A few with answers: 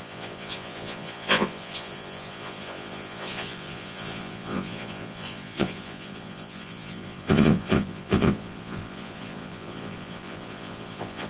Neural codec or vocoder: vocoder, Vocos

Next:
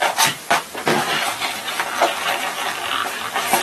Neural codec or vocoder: none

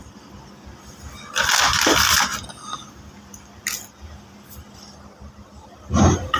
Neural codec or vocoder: none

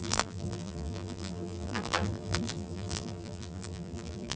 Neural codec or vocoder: vocoder, BigVGAN v2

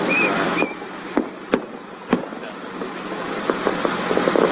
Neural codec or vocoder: vocoder, BigVGAN v2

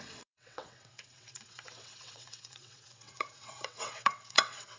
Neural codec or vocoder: vocoder, WaveNeXt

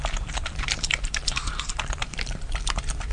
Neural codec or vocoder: vocoder, BigVGAN v2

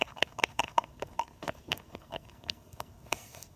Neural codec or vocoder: codec, SNAC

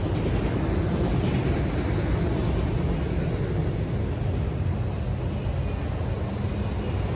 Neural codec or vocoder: none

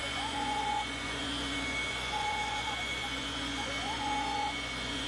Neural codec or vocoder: vocoder, Vocos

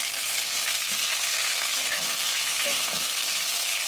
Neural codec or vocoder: codec, SNAC